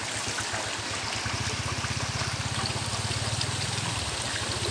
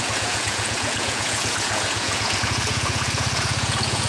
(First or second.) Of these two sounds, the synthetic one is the second